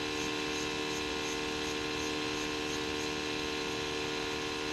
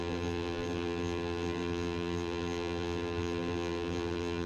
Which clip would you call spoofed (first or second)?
second